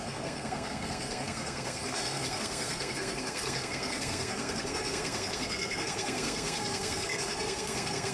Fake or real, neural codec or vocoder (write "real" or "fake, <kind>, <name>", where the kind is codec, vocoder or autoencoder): fake, codec, SNAC